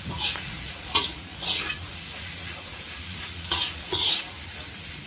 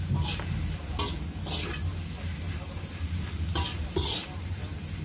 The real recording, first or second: second